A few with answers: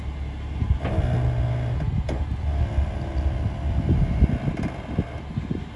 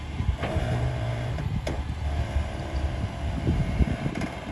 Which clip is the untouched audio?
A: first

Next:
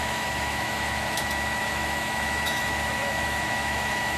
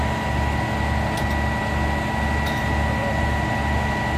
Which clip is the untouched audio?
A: second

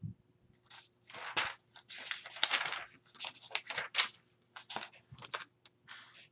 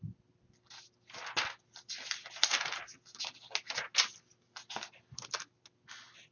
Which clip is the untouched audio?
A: second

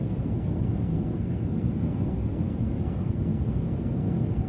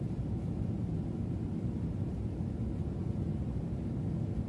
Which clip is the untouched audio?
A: second